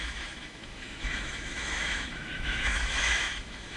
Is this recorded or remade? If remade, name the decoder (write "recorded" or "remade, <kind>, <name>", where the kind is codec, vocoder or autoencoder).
remade, autoencoder, DAC-VAE